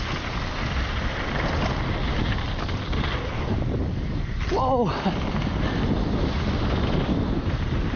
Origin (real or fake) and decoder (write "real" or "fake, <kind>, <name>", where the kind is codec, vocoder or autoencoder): real